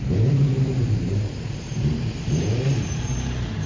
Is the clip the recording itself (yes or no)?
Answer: no